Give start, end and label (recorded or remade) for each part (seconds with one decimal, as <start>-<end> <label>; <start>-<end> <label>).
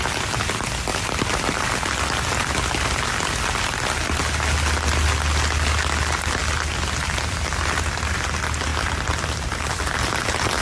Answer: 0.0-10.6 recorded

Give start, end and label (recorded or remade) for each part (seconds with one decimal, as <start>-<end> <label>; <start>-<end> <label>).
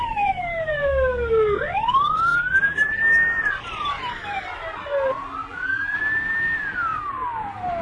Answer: 0.0-2.3 recorded; 2.3-2.9 remade; 2.9-5.4 recorded; 5.4-6.0 remade; 6.0-7.8 recorded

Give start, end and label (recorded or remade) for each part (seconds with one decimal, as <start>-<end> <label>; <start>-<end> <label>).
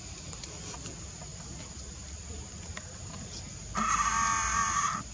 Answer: 0.0-5.1 recorded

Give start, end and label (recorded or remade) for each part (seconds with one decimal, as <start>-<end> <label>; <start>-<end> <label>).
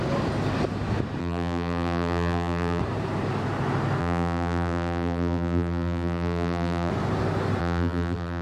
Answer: 0.0-1.2 recorded; 1.2-2.8 remade; 2.8-4.0 recorded; 4.0-6.9 remade; 6.9-7.6 recorded; 7.6-8.4 remade